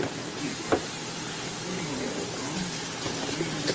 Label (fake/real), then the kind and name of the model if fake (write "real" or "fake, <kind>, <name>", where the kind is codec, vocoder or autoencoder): real